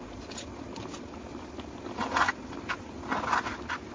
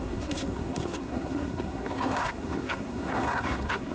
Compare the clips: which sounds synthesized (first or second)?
second